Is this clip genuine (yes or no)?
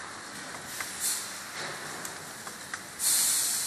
yes